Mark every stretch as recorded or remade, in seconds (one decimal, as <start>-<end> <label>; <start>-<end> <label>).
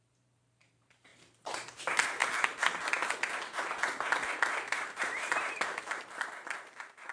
0.0-2.2 remade; 2.2-5.0 recorded; 5.0-7.1 remade